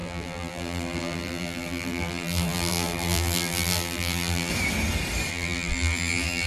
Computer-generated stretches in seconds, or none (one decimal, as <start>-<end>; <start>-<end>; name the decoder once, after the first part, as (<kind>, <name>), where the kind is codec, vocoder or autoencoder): 0.0-4.5 (vocoder, BigVGAN v2); 5.3-6.5